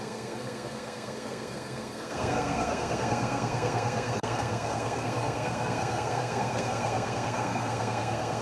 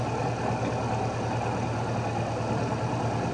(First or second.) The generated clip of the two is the first